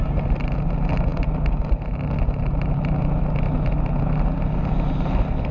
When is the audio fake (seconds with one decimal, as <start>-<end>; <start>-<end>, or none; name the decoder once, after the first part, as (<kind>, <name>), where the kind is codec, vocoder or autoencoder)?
none